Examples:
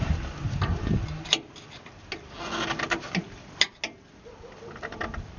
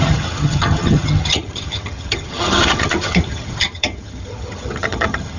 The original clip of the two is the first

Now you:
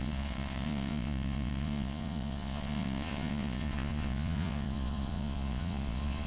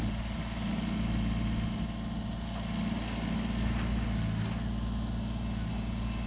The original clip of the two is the second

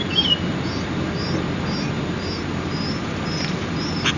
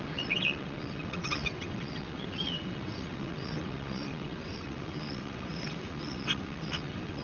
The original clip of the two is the first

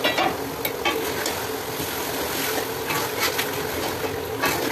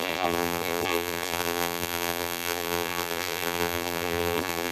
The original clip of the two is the first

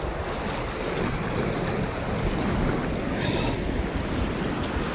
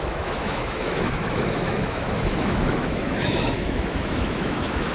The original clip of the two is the first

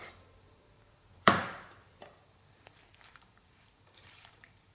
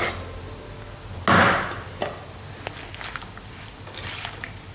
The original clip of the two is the second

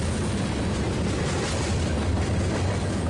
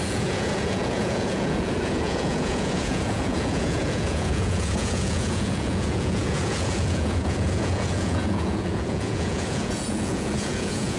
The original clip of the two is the first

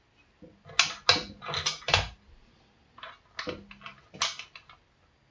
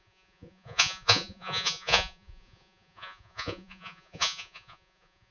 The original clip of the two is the first